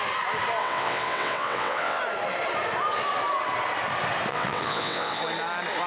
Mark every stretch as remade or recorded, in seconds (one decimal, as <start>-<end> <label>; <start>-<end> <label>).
0.0-0.6 recorded; 0.6-2.0 remade; 2.0-4.3 recorded; 4.3-5.2 remade; 5.2-5.9 recorded